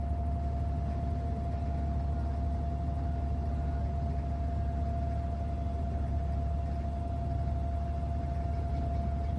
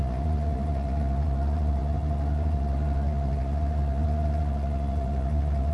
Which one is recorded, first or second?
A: first